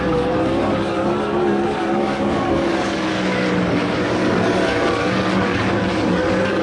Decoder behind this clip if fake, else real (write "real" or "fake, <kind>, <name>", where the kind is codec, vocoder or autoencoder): fake, codec, DAC